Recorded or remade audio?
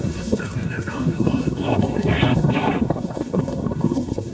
remade